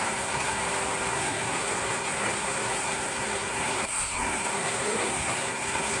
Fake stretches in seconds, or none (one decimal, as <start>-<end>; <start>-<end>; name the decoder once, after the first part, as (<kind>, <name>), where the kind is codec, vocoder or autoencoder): 0.0-0.6 (codec, SNAC); 1.1-6.0